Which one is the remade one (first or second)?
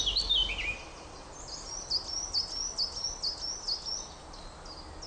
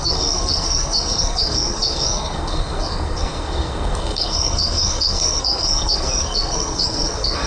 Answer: second